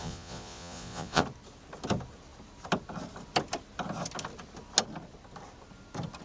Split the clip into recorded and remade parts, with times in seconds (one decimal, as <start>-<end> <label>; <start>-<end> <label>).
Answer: 0.0-1.2 remade; 1.2-6.2 recorded